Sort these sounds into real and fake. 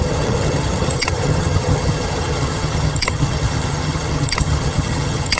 fake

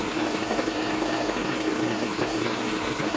fake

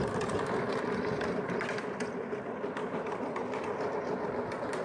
real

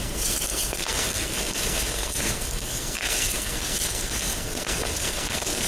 fake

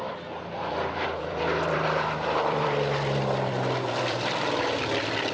fake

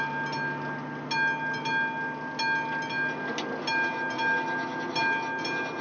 real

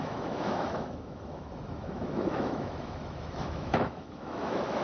fake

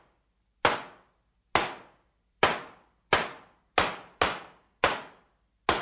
real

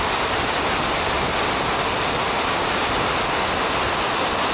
real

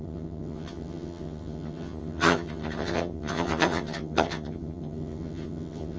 fake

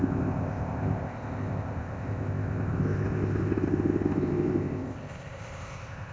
fake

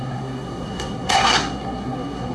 fake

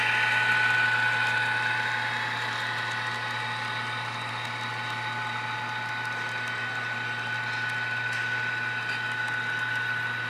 real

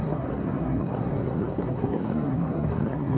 fake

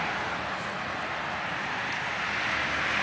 real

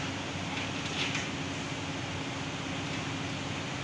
real